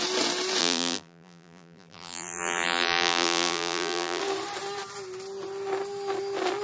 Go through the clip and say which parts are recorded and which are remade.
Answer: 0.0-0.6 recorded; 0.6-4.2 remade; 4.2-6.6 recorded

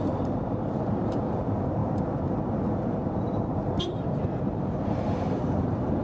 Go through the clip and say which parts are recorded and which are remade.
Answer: 0.0-6.0 remade

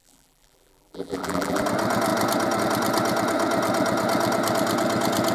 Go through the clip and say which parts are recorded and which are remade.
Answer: 0.0-1.6 remade; 1.6-5.3 recorded